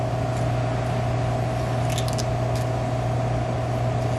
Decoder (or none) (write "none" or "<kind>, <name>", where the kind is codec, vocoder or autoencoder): none